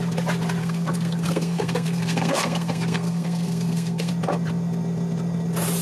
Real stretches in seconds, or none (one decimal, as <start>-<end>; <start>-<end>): 0.0-0.6; 4.1-5.8